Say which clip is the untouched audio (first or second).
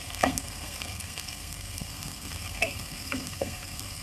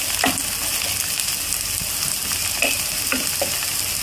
second